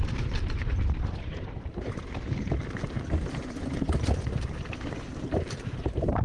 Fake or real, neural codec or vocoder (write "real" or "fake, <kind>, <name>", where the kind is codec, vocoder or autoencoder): fake, vocoder, BigVGAN v2